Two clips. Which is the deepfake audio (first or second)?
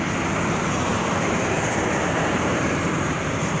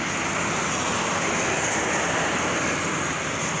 first